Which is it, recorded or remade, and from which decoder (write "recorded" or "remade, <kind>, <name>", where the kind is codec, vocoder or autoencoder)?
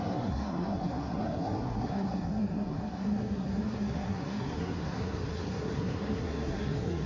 remade, codec, SNAC